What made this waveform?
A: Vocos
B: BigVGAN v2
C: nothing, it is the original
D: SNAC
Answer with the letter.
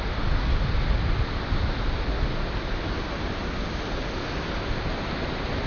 C